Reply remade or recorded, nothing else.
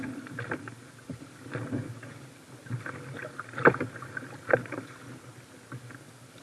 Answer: recorded